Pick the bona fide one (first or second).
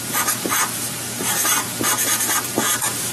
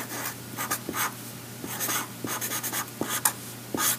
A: second